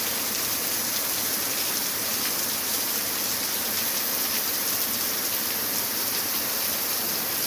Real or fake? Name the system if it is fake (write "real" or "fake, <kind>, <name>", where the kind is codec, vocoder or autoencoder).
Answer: fake, vocoder, BigVGAN v2